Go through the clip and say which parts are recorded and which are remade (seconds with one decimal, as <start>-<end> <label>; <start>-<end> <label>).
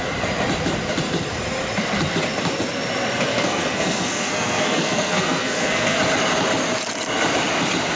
0.0-3.3 recorded; 3.3-6.0 remade; 6.0-8.0 recorded